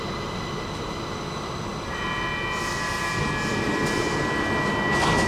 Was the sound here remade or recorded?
recorded